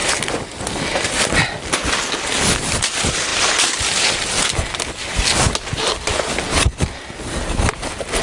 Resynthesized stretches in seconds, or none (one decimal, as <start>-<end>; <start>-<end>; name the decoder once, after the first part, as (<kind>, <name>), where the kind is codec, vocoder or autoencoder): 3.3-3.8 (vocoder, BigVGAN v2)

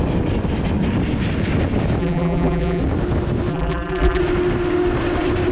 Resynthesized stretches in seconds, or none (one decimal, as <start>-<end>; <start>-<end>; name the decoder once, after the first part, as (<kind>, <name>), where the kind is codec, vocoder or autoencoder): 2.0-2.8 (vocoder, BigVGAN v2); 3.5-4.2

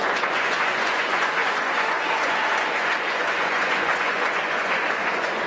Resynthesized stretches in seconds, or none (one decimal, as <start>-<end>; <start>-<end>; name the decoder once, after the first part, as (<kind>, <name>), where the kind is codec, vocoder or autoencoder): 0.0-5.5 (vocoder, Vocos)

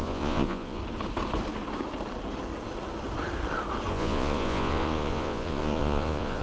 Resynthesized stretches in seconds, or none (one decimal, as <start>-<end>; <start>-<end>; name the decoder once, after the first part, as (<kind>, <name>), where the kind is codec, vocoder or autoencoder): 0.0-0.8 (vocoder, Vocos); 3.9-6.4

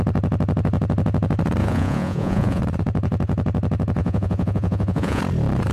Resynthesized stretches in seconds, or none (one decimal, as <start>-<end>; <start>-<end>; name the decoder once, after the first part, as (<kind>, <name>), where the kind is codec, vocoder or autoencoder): 1.6-2.6 (vocoder, Vocos); 4.0-5.2

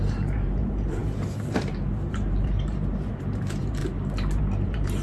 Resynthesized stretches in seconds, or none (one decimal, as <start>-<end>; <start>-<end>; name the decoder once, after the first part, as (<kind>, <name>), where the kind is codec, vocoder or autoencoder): 0.0-3.8 (vocoder, BigVGAN v2); 4.4-5.0

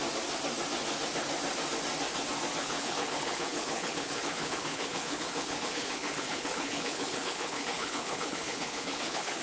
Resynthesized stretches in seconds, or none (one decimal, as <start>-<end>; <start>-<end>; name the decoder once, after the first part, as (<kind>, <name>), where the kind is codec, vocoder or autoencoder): 2.6-9.4 (codec, HILCodec)